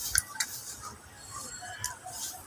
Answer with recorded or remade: recorded